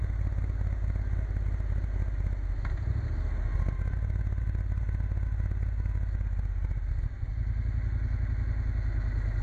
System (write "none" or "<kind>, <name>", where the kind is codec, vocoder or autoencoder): none